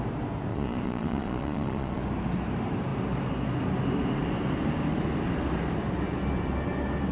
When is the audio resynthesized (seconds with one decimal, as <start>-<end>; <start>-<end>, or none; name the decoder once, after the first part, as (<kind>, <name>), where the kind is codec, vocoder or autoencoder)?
0.5-2.0 (vocoder, Vocos)